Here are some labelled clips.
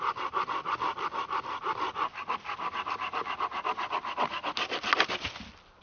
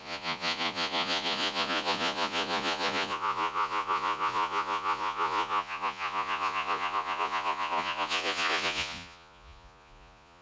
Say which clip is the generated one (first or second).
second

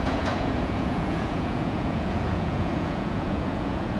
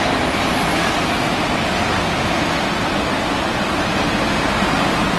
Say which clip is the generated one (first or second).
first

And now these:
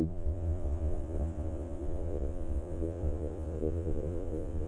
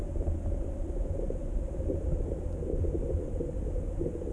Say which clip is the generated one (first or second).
first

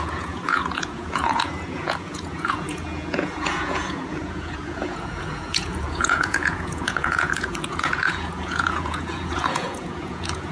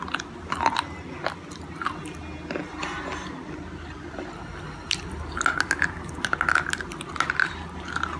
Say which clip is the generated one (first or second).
first